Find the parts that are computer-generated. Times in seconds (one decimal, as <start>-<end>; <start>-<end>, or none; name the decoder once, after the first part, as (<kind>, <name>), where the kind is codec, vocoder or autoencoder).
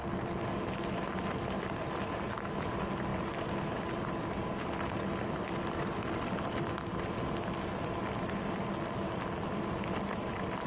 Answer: none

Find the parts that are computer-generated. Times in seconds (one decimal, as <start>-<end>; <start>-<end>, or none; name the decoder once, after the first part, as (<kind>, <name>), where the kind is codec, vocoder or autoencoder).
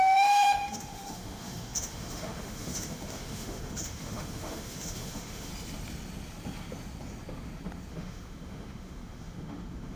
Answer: 0.0-5.5 (autoencoder, DAC-VAE); 7.9-10.0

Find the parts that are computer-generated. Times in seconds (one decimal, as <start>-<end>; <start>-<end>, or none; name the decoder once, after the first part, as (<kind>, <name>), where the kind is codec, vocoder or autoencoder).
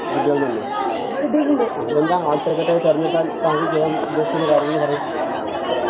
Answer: 0.0-1.5 (autoencoder, DAC-VAE); 2.5-3.1; 3.9-5.5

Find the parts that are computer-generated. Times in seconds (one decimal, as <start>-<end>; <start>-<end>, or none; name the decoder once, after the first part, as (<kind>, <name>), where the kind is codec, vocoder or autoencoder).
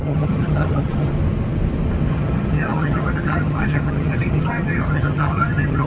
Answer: 0.0-1.1 (vocoder, HiFi-GAN); 2.1-5.9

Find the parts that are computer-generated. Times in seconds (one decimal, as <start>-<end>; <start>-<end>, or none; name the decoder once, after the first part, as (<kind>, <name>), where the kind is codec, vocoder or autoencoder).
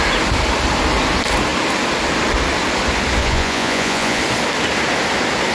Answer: 3.2-4.2 (vocoder, Vocos)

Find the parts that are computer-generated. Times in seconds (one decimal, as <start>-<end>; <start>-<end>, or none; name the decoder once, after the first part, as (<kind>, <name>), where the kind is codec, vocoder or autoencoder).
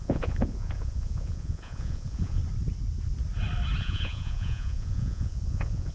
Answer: 0.0-2.4 (vocoder, Vocos); 3.8-5.9